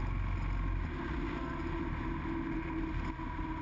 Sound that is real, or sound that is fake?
real